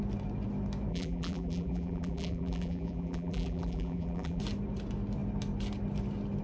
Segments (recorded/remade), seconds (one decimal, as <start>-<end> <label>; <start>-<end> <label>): 0.0-0.9 recorded; 0.9-4.4 remade; 4.4-6.4 recorded